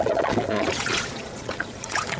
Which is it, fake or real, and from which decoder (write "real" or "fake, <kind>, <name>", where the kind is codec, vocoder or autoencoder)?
fake, vocoder, Vocos